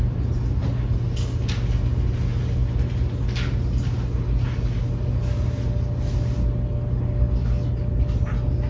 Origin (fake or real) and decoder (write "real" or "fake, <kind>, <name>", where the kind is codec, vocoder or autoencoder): real